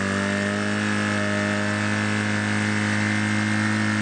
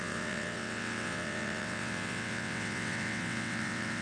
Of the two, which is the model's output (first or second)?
second